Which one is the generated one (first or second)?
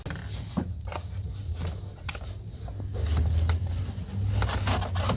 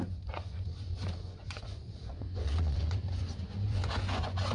second